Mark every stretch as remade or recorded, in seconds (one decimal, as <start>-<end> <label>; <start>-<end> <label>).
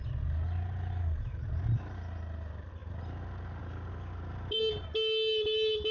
0.0-5.9 recorded